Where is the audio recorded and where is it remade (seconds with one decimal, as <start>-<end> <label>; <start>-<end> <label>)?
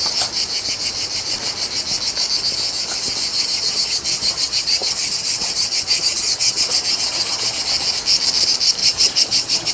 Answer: 0.0-3.3 recorded; 3.3-7.6 remade; 7.6-8.8 recorded; 8.8-9.7 remade